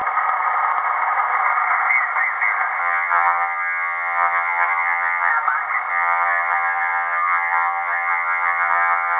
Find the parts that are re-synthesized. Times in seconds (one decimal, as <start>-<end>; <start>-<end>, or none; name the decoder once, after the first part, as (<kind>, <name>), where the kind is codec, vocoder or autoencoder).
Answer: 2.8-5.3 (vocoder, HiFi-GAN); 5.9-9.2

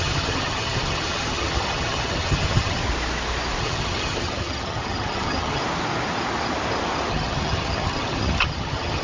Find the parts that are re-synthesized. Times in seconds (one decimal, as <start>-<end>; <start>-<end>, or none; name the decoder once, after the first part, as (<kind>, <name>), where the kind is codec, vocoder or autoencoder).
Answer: 0.0-2.8 (vocoder, HiFi-GAN); 3.6-5.6; 7.1-9.0

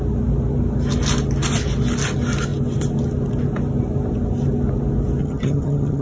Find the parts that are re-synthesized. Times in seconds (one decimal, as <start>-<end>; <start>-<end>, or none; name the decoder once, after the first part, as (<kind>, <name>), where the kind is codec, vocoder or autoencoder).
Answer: 5.2-6.0 (vocoder, HiFi-GAN)

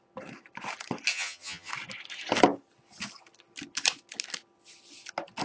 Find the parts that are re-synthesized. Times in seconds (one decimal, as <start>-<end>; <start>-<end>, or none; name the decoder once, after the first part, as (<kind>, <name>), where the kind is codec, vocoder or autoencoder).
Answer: 1.1-1.7 (vocoder, HiFi-GAN)

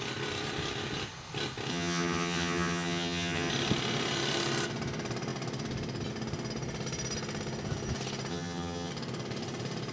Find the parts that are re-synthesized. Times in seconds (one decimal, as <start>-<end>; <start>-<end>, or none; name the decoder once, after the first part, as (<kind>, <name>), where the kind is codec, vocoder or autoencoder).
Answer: 1.7-3.5 (vocoder, HiFi-GAN); 8.3-8.9

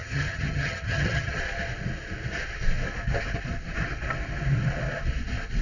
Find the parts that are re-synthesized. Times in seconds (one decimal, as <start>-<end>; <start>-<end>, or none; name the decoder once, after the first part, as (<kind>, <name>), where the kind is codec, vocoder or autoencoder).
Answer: 0.0-1.4 (vocoder, HiFi-GAN)